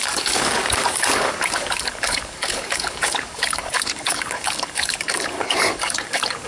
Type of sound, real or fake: fake